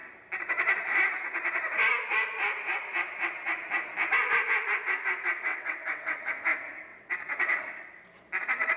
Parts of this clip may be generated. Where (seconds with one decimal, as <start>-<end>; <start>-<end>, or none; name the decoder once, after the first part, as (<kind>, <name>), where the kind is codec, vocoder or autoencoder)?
5.5-6.3 (vocoder, WaveNeXt); 6.9-7.6